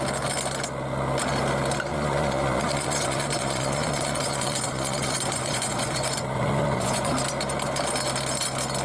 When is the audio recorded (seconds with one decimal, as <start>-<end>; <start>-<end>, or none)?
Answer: 0.0-1.9; 7.1-8.8